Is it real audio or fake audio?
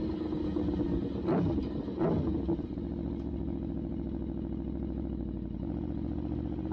real